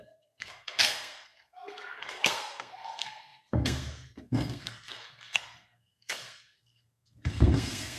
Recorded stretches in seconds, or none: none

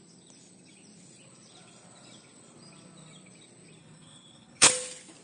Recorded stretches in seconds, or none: 0.0-3.8; 4.7-5.2

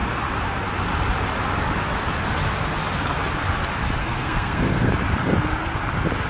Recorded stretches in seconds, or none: 0.0-4.0; 4.9-6.3

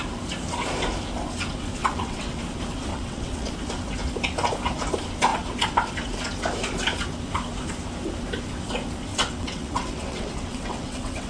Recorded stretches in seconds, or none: 0.0-1.8; 2.4-2.9; 3.5-9.1

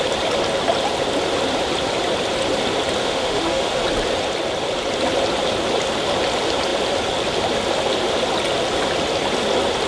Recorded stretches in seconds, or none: 0.0-3.0; 3.8-9.9

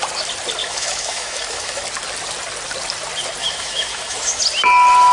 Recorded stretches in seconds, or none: 0.0-0.6; 1.8-3.4; 4.4-5.1

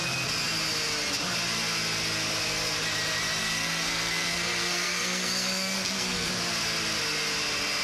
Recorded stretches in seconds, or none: 0.0-3.4; 6.3-7.8

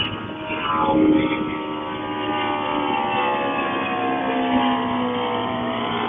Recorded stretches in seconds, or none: 0.0-5.4